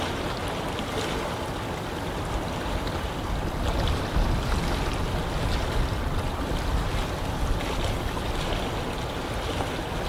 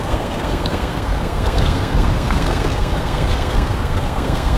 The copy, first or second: second